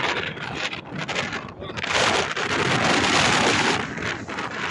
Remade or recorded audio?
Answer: remade